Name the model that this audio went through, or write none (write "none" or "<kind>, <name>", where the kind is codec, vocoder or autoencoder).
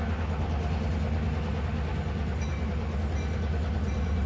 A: none